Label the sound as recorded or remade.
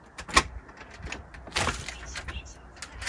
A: recorded